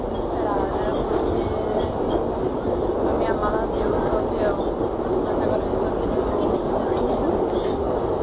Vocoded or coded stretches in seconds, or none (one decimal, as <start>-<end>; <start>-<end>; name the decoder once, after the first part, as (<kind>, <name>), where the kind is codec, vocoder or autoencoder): none